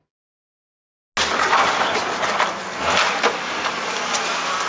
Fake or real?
real